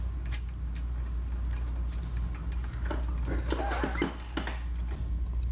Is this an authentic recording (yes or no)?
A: yes